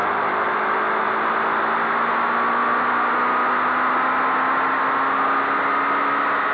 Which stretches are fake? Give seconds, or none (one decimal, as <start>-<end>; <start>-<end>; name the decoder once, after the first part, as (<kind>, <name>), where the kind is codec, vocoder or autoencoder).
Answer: none

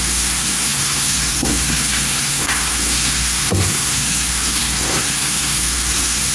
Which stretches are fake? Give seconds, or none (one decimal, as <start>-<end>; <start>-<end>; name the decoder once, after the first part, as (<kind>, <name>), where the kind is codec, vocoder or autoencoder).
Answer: 0.0-6.3 (codec, SNAC)

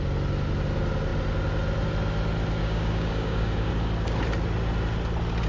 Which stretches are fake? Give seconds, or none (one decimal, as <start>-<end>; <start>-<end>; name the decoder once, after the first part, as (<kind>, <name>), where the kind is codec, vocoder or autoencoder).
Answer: 2.6-3.7 (codec, DAC)

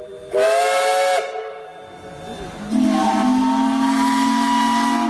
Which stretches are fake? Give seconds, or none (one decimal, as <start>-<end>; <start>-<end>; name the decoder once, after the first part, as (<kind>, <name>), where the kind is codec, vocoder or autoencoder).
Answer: none

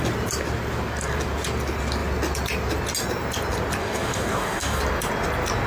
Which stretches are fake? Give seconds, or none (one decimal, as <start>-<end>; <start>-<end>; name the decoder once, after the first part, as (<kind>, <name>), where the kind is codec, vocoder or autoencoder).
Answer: 3.8-4.8 (codec, DAC)

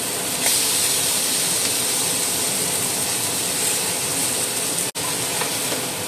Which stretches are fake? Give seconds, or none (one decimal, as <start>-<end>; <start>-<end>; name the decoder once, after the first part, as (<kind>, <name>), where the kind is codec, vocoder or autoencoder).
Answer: 0.8-1.3 (vocoder, BigVGAN v2); 3.0-3.6